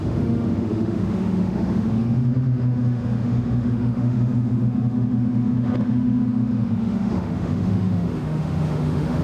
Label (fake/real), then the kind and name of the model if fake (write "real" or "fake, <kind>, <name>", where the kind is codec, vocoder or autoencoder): fake, autoencoder, DAC-VAE